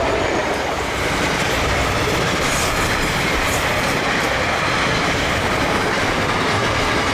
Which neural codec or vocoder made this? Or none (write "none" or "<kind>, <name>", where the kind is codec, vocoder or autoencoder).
none